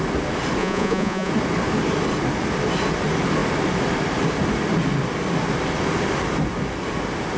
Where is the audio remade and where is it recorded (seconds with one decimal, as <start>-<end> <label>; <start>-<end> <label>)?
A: 0.0-0.6 recorded; 0.6-1.3 remade; 1.3-7.4 recorded